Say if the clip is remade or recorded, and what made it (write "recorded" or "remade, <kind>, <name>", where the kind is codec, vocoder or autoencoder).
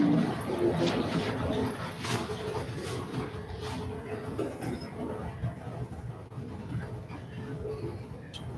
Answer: recorded